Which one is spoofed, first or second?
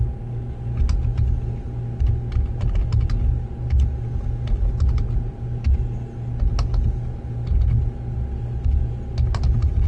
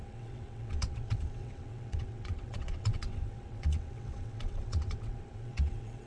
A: second